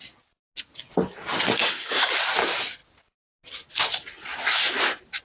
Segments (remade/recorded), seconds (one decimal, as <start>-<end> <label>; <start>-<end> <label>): 0.0-1.6 recorded; 1.6-2.1 remade; 2.1-5.2 recorded